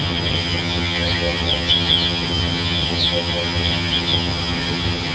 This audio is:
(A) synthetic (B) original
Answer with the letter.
A